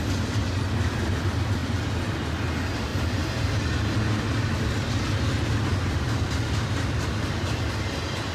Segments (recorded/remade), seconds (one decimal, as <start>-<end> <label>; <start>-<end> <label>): 0.0-2.9 recorded; 2.9-3.5 remade; 3.5-8.3 recorded